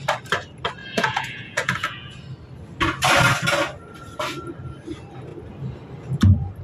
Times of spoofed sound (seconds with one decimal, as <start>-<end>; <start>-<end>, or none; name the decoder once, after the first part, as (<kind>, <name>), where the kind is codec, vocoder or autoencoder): 0.8-2.1 (vocoder, Vocos)